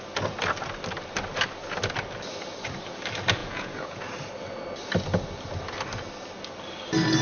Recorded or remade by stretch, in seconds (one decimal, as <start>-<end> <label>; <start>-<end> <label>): 0.0-3.4 recorded; 3.4-4.0 remade; 4.0-7.2 recorded